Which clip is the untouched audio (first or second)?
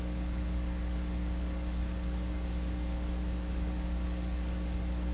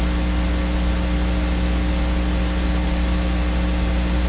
second